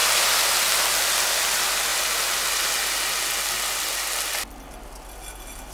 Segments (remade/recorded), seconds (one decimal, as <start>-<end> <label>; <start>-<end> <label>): 0.0-5.7 recorded